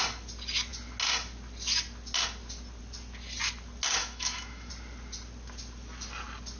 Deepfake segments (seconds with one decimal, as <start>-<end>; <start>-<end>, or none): 4.0-4.7